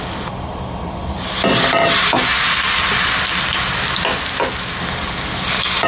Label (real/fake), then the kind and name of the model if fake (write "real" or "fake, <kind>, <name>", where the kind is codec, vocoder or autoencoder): real